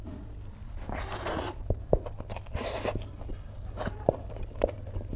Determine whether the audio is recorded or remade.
recorded